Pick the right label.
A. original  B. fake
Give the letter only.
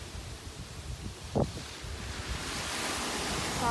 A